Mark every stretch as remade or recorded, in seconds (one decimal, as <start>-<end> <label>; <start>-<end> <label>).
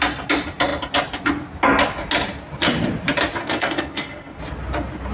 0.0-3.4 recorded; 3.4-4.4 remade; 4.4-5.1 recorded